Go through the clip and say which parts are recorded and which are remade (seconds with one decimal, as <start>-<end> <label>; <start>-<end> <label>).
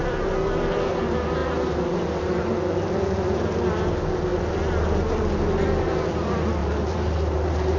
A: 0.0-6.6 recorded; 6.6-7.8 remade